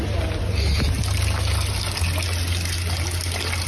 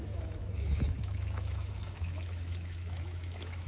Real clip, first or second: first